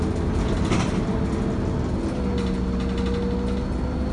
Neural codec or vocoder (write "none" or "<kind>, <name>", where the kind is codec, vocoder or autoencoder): none